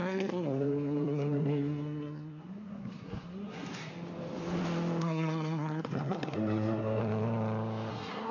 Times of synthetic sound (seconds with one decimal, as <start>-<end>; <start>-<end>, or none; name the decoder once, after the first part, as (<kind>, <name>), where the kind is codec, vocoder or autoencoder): 0.0-3.9 (codec, SNAC); 5.0-7.0; 7.9-8.3

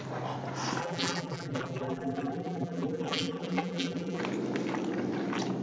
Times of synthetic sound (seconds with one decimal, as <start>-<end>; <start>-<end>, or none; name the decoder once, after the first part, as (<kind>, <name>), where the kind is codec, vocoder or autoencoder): 0.8-4.2 (vocoder, BigVGAN v2)

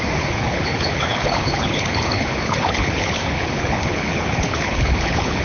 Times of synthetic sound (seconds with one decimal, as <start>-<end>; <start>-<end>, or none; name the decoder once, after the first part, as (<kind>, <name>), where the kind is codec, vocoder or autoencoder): 0.0-5.4 (codec, HILCodec)

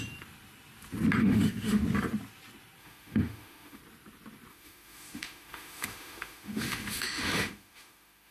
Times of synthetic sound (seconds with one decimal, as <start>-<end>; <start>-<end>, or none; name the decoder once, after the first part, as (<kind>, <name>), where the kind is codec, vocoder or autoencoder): 1.2-1.8 (autoencoder, DAC-VAE); 2.8-3.8; 4.5-8.3